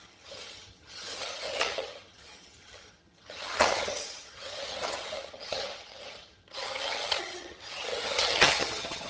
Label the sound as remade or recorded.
remade